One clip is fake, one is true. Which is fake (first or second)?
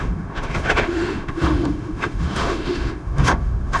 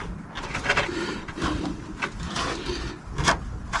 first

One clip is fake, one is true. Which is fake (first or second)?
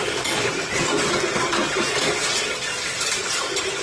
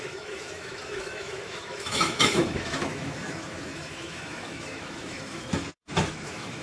second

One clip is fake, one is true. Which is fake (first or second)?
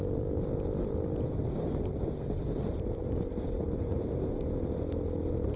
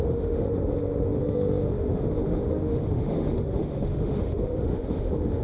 second